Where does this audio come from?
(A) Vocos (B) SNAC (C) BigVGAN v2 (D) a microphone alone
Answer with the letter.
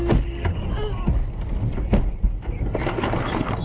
D